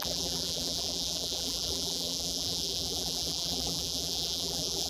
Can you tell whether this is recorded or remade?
remade